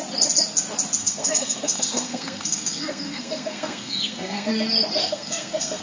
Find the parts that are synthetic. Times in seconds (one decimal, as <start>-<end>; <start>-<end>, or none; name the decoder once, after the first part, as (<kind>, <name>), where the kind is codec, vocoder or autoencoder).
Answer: 1.0-4.5 (codec, SNAC); 5.0-5.8

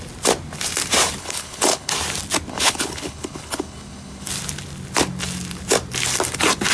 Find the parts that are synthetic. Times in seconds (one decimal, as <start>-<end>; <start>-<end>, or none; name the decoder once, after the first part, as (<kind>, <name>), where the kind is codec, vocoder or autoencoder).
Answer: 1.2-1.9 (codec, HILCodec); 2.5-4.3

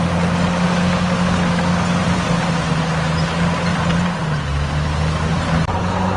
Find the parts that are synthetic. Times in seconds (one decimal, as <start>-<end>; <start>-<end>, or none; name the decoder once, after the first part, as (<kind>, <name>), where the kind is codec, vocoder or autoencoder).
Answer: 2.0-2.7 (vocoder, BigVGAN v2); 3.7-4.7; 5.3-5.8

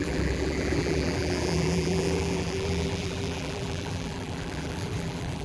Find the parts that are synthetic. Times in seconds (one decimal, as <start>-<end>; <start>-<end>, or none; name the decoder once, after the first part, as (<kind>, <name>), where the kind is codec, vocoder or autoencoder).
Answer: 0.0-5.4 (vocoder, BigVGAN v2)

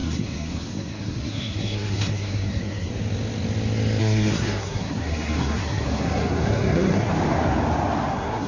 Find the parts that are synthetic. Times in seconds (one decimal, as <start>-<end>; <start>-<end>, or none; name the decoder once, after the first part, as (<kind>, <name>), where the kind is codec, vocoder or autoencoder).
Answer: 0.0-2.9 (codec, SNAC); 4.0-7.1; 8.1-8.5